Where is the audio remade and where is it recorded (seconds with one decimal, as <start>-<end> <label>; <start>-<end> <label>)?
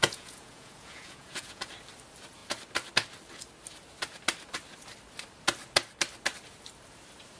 0.0-1.7 remade; 1.7-7.4 recorded